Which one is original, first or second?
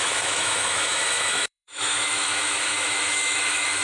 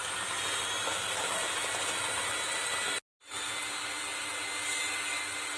second